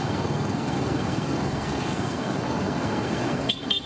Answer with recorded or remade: remade